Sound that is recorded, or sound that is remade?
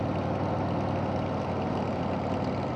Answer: recorded